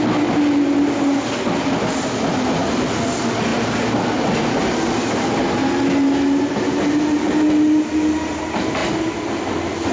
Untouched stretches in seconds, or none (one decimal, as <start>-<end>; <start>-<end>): 0.0-9.9